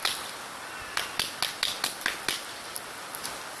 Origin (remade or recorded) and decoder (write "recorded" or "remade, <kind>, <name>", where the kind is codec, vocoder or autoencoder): recorded